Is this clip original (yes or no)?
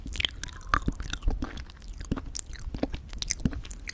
yes